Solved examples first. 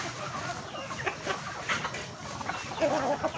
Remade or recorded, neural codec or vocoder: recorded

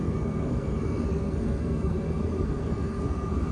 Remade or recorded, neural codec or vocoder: remade, codec, SNAC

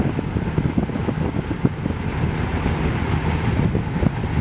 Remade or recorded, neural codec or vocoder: recorded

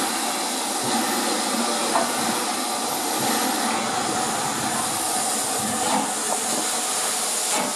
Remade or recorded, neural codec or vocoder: recorded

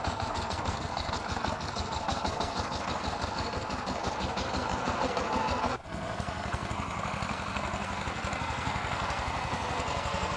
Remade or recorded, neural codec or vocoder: remade, codec, SNAC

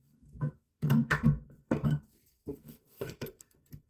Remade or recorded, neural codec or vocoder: remade, codec, SNAC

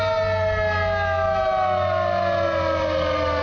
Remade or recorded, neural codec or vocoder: recorded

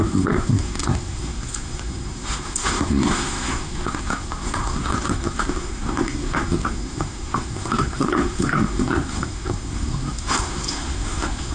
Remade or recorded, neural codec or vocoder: remade, codec, SNAC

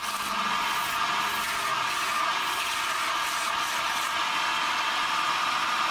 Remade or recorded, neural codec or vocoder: recorded